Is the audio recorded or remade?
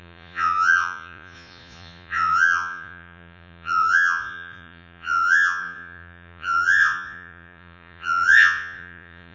remade